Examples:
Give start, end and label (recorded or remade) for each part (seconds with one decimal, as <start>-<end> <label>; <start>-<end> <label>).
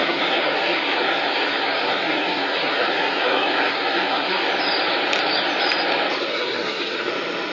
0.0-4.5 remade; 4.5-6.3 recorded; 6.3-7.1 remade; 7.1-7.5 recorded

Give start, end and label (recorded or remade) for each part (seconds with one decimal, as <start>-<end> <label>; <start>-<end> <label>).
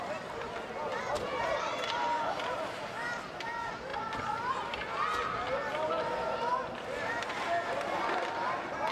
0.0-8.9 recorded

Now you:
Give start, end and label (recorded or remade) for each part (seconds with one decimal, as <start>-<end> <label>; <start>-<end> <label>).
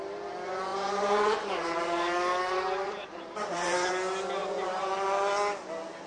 0.0-0.7 recorded; 0.7-3.9 remade; 3.9-4.4 recorded; 4.4-4.9 remade; 4.9-6.1 recorded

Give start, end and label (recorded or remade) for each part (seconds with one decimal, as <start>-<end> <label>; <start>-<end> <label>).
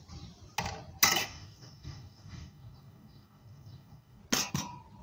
0.0-1.2 recorded; 1.2-4.2 remade; 4.2-5.0 recorded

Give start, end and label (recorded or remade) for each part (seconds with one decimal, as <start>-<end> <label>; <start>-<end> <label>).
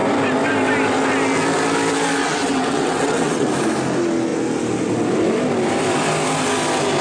0.0-2.2 recorded; 2.2-3.5 remade; 3.5-7.0 recorded